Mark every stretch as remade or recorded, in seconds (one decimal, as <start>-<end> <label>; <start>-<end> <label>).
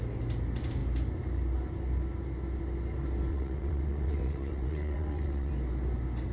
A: 0.0-3.3 recorded; 3.3-5.5 remade; 5.5-6.3 recorded